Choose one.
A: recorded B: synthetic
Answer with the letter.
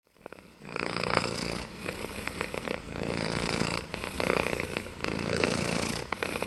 B